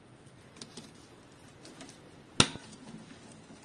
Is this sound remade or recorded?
recorded